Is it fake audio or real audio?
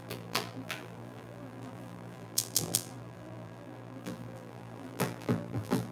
fake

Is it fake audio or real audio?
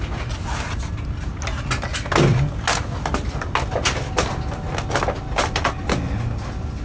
real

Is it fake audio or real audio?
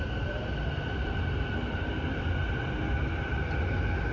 real